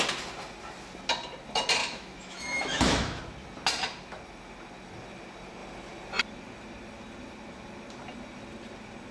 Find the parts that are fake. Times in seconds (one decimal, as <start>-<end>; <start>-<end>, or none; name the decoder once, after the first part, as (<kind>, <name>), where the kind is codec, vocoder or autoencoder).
1.8-3.2 (autoencoder, DAC-VAE)